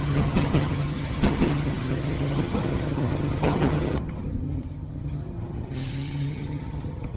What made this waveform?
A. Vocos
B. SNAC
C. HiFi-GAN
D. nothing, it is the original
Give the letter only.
C